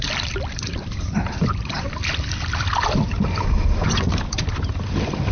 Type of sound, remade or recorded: remade